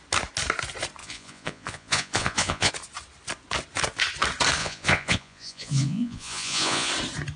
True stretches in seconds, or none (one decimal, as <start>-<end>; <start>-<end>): 0.0-1.0; 2.7-4.6; 6.9-7.4